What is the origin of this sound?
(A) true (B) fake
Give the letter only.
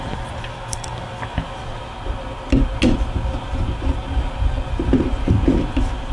A